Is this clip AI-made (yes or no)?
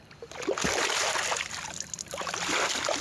no